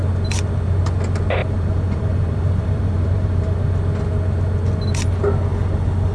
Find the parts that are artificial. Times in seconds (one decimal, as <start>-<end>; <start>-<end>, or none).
1.4-3.7